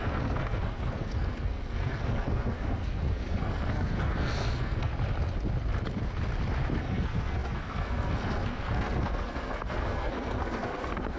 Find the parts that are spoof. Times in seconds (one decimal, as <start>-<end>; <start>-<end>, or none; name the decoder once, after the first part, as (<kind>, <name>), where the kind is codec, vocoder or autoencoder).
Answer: 0.0-4.9 (codec, SNAC); 6.8-11.2

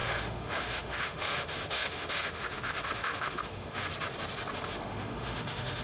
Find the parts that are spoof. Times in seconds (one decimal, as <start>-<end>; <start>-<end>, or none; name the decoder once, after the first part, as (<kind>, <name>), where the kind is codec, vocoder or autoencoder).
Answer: 0.0-3.9 (autoencoder, DAC-VAE); 4.6-5.8